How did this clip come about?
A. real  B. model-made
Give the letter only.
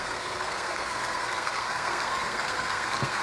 B